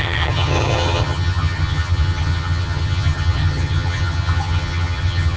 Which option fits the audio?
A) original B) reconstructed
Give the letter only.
B